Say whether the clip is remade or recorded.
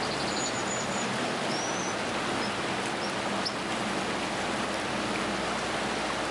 recorded